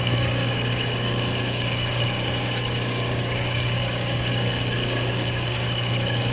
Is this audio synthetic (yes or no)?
yes